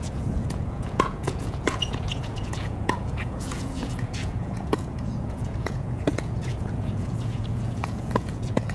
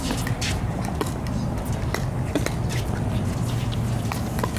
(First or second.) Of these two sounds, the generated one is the first